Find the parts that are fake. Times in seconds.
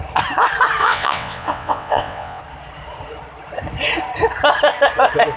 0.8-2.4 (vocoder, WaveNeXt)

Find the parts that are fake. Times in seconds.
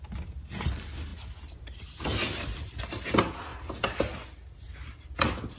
none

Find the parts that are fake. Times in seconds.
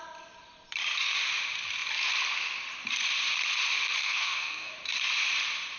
4.0-4.7 (codec, SNAC)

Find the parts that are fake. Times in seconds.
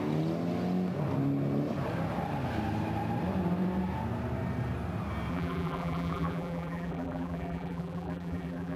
5.3-8.8 (vocoder, BigVGAN v2)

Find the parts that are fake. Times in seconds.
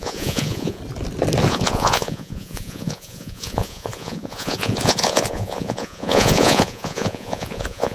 0.0-0.8 (vocoder, Vocos); 1.5-7.9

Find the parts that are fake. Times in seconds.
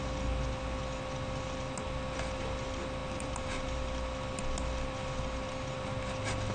none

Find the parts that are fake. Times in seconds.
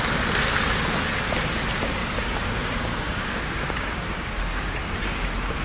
2.0-4.8 (codec, DAC)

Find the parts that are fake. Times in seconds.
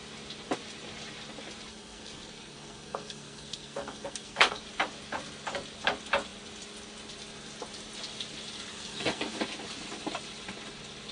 1.7-4.6 (codec, SNAC); 8.7-9.4